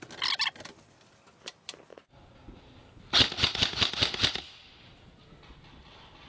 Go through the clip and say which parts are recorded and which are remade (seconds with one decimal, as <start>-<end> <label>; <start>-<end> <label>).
0.0-6.3 recorded